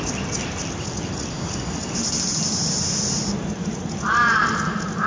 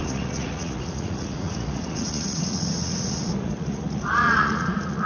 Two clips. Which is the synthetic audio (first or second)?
second